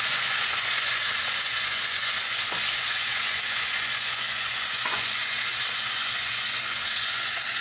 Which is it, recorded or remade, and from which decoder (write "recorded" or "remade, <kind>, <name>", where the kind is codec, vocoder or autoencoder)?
remade, vocoder, Vocos